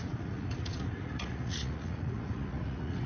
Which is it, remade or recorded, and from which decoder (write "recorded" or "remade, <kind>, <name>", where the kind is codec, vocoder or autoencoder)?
remade, vocoder, Vocos